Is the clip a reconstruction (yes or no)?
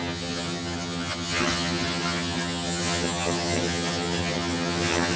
yes